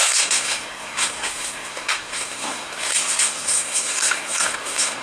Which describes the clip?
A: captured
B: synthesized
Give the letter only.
B